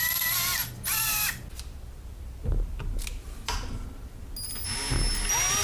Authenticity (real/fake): real